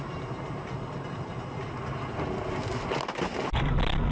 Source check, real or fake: real